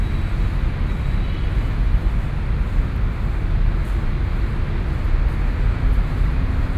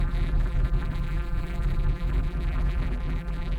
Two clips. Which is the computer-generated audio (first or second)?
second